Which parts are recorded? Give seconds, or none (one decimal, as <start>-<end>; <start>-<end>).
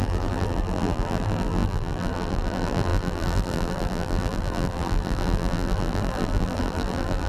none